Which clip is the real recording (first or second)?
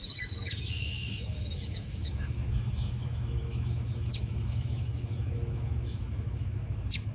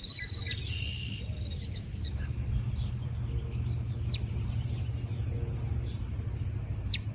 second